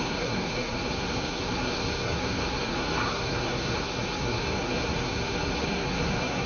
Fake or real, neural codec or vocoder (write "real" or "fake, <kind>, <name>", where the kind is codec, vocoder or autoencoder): fake, codec, SNAC